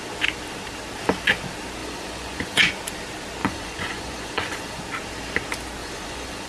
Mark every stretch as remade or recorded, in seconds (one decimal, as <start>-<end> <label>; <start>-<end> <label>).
0.0-1.8 recorded; 1.8-2.7 remade; 2.7-3.4 recorded; 3.4-4.8 remade; 4.8-5.8 recorded; 5.8-6.5 remade